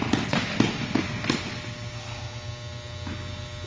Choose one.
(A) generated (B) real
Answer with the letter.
B